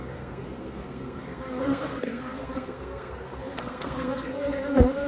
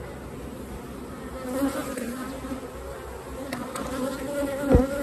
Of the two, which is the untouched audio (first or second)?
second